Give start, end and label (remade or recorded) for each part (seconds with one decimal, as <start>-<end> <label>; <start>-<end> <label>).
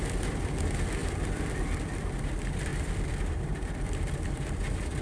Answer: 0.0-2.7 recorded; 2.7-5.0 remade